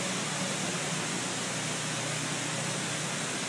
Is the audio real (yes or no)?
yes